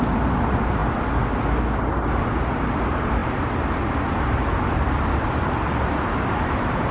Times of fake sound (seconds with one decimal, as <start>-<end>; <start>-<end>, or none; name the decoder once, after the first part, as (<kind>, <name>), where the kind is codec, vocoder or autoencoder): none